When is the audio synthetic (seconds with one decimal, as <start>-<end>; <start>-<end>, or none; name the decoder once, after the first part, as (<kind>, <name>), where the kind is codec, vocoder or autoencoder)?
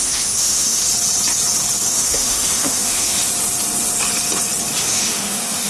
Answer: 0.0-0.8 (autoencoder, DAC-VAE); 1.9-3.3; 4.8-5.7